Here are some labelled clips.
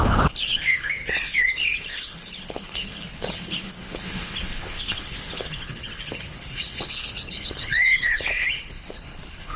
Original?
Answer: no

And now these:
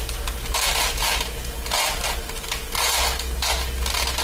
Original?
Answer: yes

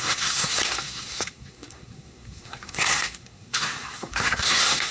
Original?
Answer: no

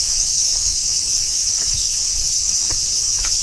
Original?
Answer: no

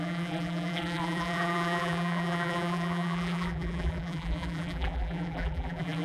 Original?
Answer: no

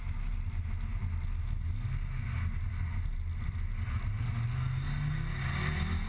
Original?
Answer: yes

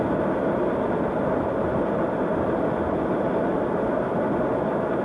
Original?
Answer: yes